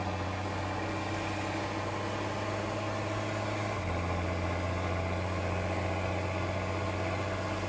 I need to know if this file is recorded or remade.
recorded